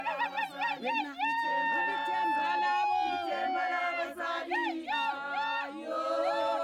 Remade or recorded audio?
recorded